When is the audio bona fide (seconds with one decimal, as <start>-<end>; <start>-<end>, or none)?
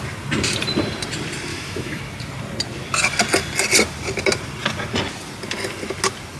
0.0-1.5; 2.0-6.4